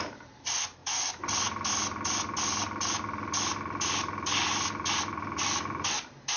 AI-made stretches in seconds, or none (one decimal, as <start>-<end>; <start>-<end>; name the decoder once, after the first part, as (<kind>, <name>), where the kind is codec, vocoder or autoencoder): none